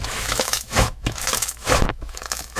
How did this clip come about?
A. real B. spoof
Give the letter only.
B